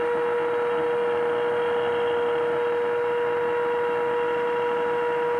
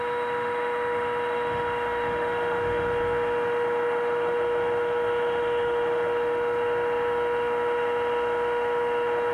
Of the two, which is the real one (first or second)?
first